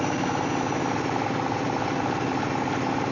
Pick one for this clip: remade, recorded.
recorded